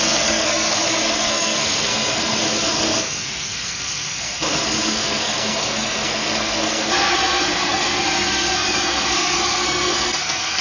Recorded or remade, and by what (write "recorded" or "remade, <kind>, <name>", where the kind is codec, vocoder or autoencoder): remade, codec, SNAC